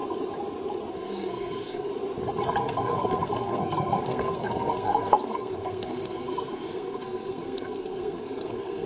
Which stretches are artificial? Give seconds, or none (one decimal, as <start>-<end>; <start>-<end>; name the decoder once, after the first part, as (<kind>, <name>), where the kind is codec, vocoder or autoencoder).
0.9-1.9 (codec, SNAC); 2.6-8.9

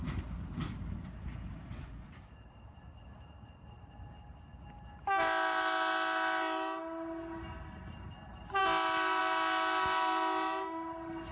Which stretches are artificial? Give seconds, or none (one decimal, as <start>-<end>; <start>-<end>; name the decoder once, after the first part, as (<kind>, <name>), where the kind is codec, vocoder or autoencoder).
none